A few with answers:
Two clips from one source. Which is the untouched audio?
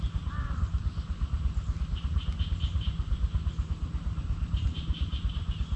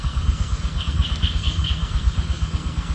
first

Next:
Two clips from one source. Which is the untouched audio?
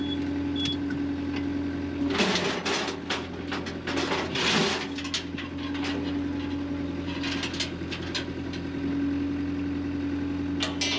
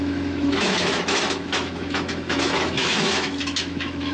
first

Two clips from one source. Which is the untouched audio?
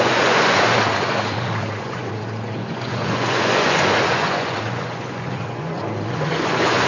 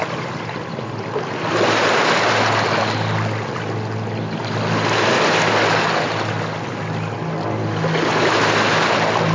second